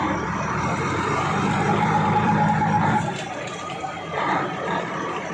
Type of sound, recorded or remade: remade